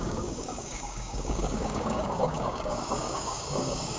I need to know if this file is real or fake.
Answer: fake